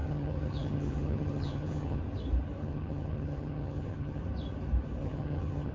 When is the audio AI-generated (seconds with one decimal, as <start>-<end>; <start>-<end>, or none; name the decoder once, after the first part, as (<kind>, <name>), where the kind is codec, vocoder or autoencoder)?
0.0-2.0 (vocoder, HiFi-GAN); 2.6-4.2; 5.0-5.7